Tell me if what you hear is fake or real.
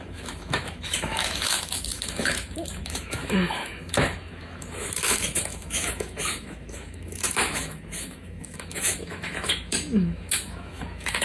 fake